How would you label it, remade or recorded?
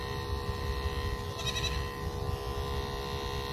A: recorded